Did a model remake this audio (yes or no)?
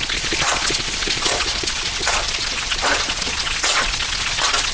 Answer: yes